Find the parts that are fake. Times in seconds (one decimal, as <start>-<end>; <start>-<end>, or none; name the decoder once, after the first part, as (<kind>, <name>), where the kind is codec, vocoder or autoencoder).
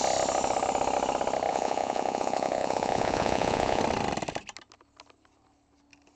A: 1.5-3.8 (vocoder, Vocos)